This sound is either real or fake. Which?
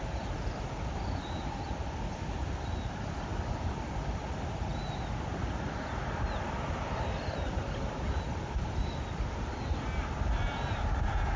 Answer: real